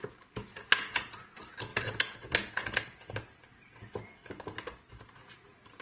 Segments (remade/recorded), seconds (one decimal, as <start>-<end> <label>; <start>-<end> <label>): 0.0-0.5 recorded; 0.5-1.2 remade; 1.2-1.7 recorded; 1.7-3.1 remade; 3.1-5.8 recorded